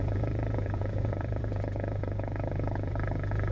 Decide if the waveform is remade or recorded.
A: remade